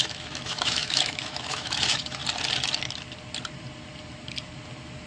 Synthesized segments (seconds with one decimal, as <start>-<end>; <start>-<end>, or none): 0.0-2.2